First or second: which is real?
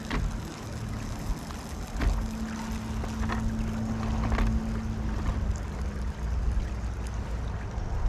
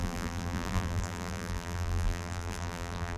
first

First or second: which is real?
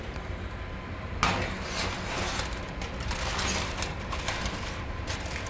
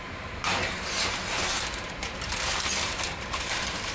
first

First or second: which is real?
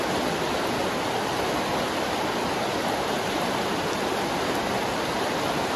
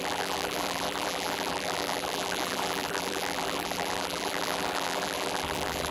first